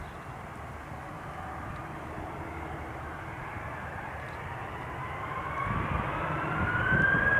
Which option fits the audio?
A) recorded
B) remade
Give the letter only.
B